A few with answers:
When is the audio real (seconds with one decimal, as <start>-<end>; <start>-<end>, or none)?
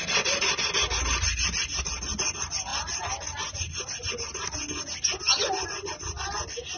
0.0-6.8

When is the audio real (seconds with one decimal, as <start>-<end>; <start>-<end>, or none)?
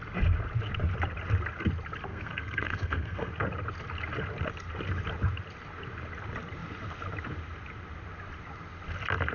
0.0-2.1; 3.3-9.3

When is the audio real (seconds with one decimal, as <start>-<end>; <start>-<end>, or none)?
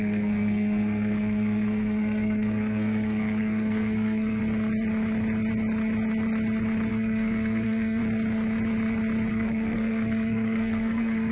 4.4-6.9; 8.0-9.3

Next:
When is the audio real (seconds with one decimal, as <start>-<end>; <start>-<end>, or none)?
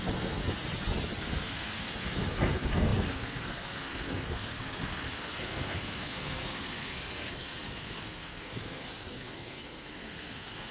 0.4-1.2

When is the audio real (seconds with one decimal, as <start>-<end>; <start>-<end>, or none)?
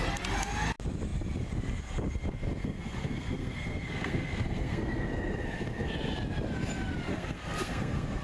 0.0-2.6; 5.9-7.1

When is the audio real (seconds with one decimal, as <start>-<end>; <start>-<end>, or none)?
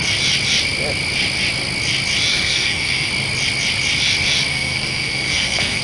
0.0-2.3; 3.1-4.5